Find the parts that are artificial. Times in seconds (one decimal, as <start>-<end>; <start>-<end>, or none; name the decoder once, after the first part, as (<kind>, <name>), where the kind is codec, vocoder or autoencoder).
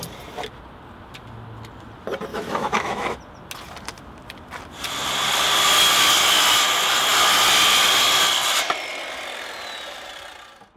2.3-3.2 (autoencoder, DAC-VAE)